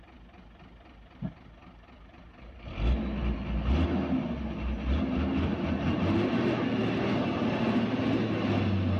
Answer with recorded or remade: recorded